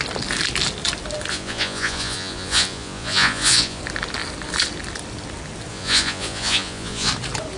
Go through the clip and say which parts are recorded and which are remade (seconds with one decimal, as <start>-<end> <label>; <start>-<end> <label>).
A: 0.0-1.3 recorded; 1.3-3.8 remade; 3.8-5.7 recorded; 5.7-7.1 remade; 7.1-7.6 recorded